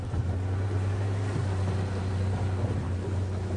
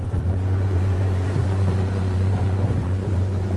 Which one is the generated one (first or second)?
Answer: second